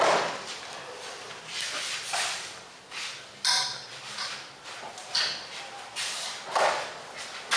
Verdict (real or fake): real